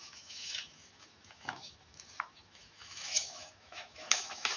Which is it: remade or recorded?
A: remade